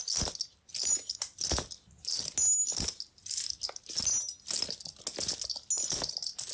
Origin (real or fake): real